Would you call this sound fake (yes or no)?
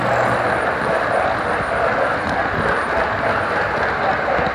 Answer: no